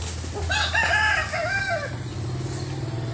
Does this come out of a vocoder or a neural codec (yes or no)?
no